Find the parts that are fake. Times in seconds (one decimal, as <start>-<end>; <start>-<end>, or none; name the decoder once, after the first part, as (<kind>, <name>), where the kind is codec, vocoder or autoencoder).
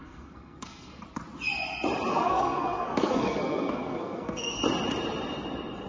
0.0-1.0 (codec, SNAC); 2.1-4.6